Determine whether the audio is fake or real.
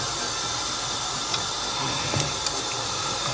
real